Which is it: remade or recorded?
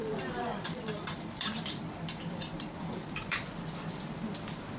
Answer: remade